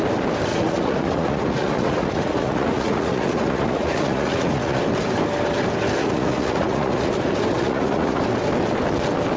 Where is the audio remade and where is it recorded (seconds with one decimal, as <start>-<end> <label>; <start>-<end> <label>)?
0.0-0.5 recorded; 0.5-4.8 remade; 4.8-6.0 recorded; 6.0-7.1 remade; 7.1-7.5 recorded; 7.5-8.2 remade; 8.2-9.4 recorded